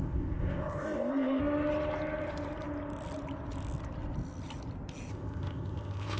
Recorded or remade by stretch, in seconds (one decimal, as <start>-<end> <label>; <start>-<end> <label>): 0.0-1.4 remade; 1.4-5.1 recorded; 5.1-6.2 remade